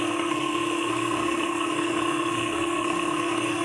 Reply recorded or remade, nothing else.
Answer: remade